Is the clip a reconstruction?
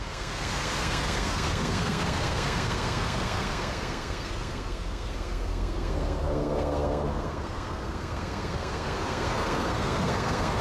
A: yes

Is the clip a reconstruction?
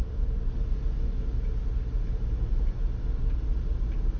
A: no